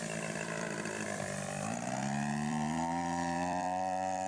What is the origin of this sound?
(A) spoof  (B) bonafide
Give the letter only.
A